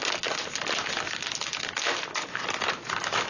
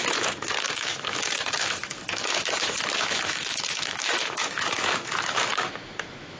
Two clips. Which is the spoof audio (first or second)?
second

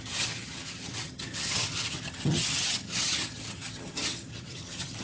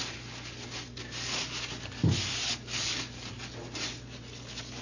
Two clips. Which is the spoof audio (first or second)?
first